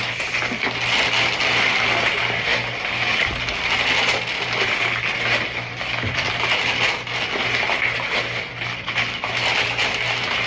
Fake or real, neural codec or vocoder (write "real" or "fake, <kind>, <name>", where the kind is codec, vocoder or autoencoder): real